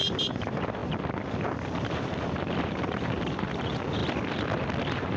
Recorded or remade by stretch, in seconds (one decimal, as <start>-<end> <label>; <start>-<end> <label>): 0.0-0.8 remade; 0.8-1.8 recorded; 1.8-4.0 remade; 4.0-5.2 recorded